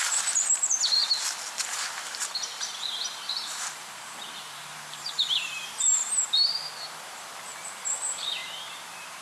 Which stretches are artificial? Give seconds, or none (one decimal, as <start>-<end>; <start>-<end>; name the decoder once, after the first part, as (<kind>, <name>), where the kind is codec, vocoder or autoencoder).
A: 0.0-1.0 (vocoder, BigVGAN v2); 1.6-9.2

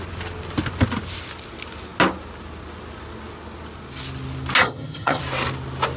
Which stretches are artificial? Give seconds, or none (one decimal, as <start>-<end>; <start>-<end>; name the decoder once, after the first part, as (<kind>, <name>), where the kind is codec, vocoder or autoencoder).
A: 4.6-5.2 (vocoder, HiFi-GAN)

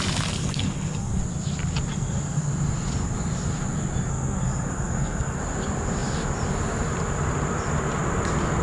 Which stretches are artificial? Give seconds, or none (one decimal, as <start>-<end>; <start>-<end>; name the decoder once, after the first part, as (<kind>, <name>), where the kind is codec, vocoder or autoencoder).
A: 0.4-1.2 (codec, SNAC); 1.9-2.5; 4.1-5.4

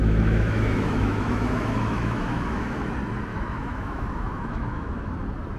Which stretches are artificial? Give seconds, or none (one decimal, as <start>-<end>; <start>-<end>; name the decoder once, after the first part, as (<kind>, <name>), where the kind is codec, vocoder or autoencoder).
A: 0.0-2.9 (autoencoder, DAC-VAE); 3.3-5.1

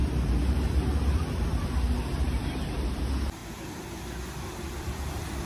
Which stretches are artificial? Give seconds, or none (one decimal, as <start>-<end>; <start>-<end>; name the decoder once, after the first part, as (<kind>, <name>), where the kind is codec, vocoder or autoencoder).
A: 0.0-3.0 (vocoder, BigVGAN v2)